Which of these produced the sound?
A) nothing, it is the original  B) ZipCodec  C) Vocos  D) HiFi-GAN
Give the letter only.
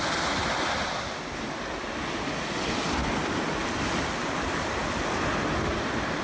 A